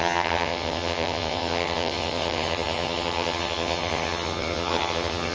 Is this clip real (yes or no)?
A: no